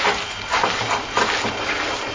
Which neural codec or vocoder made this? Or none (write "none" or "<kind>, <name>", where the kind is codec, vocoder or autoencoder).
none